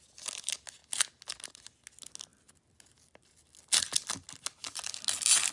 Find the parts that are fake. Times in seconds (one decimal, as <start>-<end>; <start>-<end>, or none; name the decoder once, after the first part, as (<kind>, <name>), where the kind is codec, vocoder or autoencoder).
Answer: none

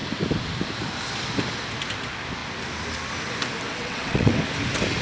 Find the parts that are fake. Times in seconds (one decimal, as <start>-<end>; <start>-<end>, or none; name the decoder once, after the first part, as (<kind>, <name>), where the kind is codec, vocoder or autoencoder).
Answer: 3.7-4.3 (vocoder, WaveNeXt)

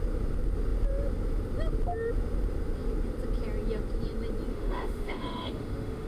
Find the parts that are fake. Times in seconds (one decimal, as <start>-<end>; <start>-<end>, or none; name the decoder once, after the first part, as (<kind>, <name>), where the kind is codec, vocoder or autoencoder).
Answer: 4.5-6.1 (autoencoder, DAC-VAE)